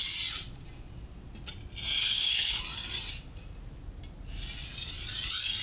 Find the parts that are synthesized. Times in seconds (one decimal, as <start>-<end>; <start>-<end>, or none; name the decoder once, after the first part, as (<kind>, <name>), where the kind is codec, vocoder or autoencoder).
2.0-2.6 (codec, HILCodec)

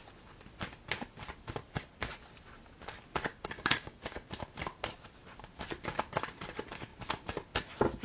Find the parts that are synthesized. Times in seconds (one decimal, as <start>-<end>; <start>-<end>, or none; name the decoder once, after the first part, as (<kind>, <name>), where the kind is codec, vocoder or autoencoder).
3.3-4.0 (codec, DAC)

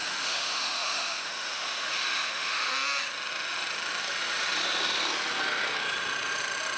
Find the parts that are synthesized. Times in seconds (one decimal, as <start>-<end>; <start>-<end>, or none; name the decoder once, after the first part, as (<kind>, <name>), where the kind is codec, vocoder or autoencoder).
0.0-2.7 (autoencoder, DAC-VAE)

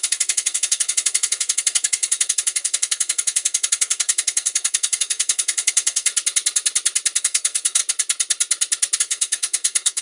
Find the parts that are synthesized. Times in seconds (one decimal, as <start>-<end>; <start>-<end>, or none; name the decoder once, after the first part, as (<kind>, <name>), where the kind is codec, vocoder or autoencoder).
0.0-6.1 (codec, SNAC); 7.2-7.8; 9.0-10.0

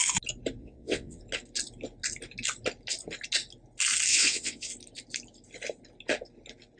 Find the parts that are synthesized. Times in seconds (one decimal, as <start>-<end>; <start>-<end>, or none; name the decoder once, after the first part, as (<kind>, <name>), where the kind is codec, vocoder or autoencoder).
0.6-1.2 (vocoder, WaveNeXt); 4.1-4.7

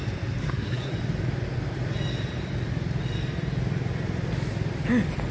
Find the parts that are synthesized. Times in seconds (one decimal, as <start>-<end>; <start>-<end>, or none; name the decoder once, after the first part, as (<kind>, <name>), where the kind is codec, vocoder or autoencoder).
0.4-0.9 (codec, SNAC)

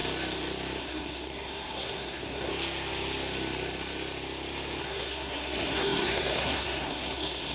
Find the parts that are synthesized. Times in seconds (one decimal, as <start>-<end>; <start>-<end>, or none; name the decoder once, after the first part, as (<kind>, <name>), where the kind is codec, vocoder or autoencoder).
0.8-2.5 (codec, SNAC); 4.8-7.5

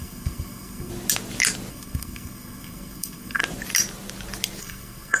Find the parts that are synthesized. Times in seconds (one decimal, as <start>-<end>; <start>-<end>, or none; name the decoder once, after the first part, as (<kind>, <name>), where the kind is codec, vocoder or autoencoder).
0.0-0.9 (codec, SNAC); 1.7-3.4; 4.6-5.2